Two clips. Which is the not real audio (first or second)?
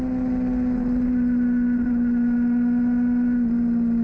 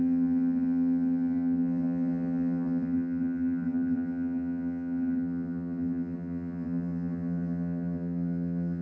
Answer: second